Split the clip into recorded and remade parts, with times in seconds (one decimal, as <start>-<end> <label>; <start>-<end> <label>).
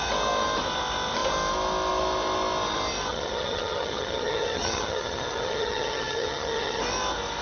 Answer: 0.0-3.1 recorded; 3.1-6.8 remade; 6.8-7.4 recorded